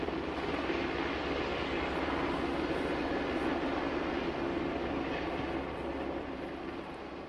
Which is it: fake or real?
real